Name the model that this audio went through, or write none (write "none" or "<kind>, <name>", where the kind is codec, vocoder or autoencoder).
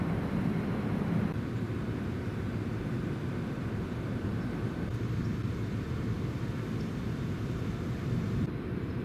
vocoder, BigVGAN v2